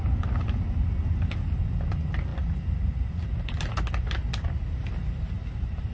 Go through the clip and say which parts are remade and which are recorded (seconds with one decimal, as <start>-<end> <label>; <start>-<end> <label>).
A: 0.0-5.9 recorded